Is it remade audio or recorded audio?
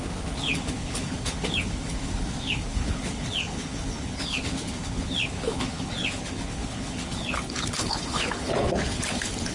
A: remade